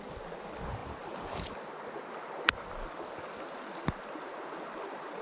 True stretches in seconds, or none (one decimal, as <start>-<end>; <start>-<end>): 0.0-5.2